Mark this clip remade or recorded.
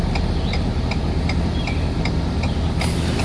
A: recorded